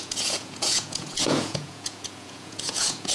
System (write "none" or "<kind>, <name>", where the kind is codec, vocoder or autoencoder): vocoder, Vocos